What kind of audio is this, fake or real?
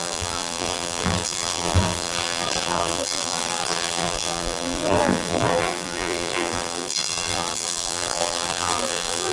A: fake